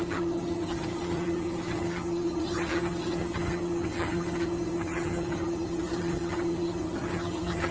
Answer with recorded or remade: remade